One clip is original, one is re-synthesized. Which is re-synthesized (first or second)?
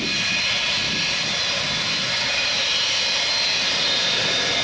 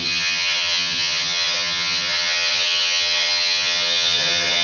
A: second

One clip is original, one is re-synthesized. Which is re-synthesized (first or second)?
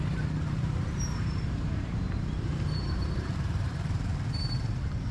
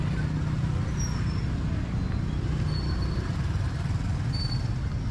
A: first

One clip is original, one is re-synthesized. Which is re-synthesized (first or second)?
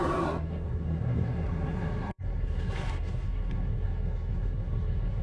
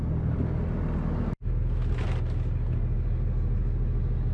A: first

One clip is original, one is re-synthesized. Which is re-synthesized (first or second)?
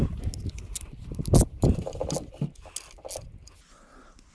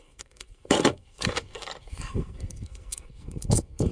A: second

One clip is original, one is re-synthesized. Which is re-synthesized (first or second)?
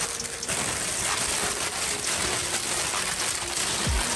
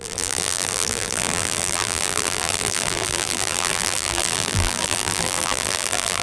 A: second